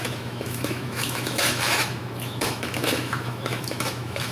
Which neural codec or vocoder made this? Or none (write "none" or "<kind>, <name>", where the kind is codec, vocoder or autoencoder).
autoencoder, DAC-VAE